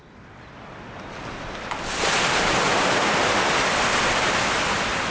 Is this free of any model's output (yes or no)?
yes